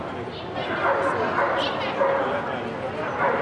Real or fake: real